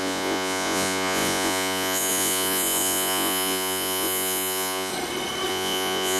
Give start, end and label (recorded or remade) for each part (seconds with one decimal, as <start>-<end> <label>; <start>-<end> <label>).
0.0-4.9 remade; 4.9-5.5 recorded; 5.5-6.2 remade